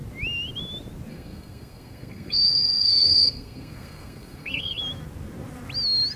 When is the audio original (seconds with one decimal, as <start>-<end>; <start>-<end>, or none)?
0.0-1.1; 4.8-6.2